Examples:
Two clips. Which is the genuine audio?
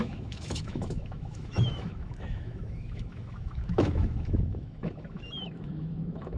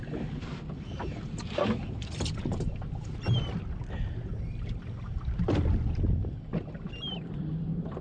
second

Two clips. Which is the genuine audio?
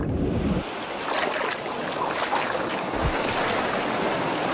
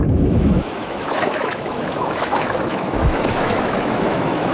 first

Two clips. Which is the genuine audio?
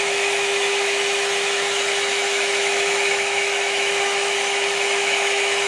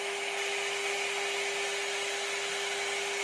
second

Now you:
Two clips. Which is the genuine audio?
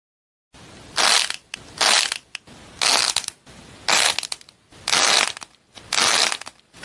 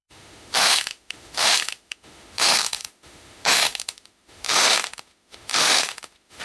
first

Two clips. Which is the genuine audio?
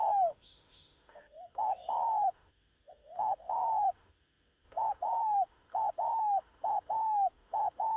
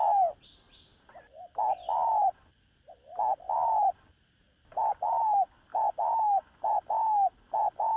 second